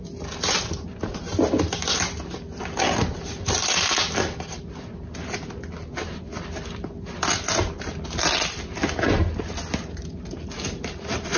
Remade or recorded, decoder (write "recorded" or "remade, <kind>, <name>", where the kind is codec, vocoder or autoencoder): recorded